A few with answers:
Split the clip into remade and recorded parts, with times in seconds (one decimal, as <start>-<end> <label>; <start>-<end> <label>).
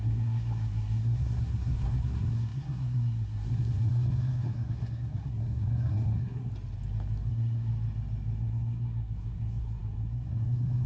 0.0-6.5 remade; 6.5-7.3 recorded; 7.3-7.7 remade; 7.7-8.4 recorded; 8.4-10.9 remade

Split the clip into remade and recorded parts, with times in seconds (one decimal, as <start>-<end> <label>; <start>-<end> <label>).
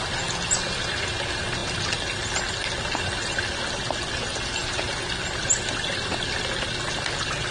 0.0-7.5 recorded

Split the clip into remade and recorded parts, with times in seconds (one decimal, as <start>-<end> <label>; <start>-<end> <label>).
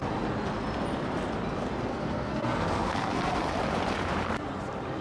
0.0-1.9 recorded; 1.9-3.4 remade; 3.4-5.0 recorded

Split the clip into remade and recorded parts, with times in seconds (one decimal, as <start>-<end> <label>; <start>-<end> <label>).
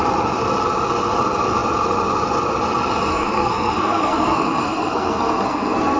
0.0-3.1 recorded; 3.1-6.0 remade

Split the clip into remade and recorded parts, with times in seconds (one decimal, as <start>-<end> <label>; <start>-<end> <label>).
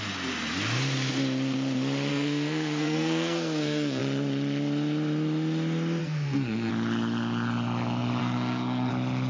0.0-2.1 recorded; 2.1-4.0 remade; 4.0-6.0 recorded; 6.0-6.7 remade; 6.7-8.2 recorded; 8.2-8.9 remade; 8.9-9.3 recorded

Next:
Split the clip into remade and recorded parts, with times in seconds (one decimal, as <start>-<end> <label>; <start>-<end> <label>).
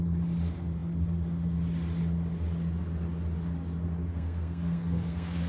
0.0-4.0 recorded; 4.0-5.5 remade